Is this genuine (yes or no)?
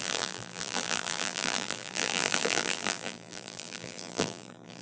no